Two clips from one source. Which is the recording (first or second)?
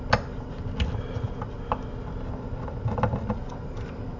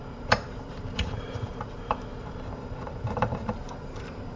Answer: first